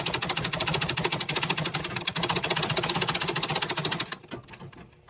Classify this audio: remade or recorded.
recorded